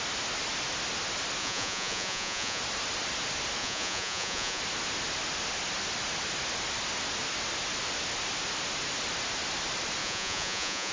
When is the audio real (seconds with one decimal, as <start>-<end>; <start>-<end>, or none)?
0.0-1.4; 2.6-3.6; 4.6-10.0